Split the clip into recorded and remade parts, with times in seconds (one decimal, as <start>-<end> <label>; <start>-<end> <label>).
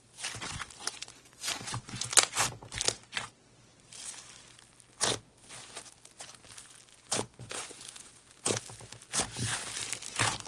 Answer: 0.0-0.8 recorded; 0.8-2.1 remade; 2.1-6.9 recorded; 6.9-8.4 remade; 8.4-10.5 recorded